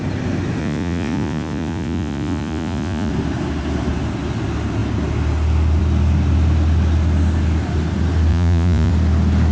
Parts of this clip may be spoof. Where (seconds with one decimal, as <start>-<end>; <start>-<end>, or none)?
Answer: 0.6-3.1; 8.3-8.9